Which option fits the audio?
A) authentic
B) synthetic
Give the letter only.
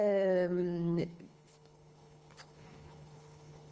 B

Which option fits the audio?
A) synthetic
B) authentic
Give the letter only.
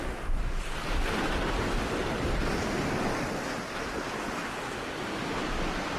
B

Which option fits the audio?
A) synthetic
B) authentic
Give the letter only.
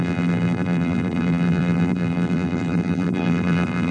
A